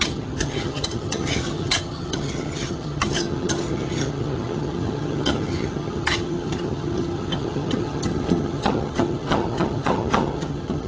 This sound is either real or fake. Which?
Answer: fake